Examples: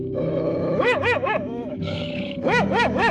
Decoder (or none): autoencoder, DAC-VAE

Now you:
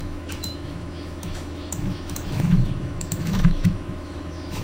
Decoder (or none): autoencoder, DAC-VAE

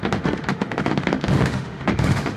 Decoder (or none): autoencoder, DAC-VAE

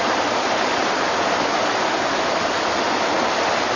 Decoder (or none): none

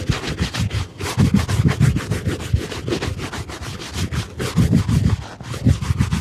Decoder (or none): none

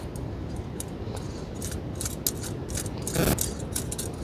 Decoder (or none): none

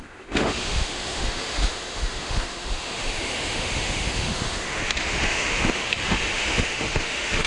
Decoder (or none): autoencoder, DAC-VAE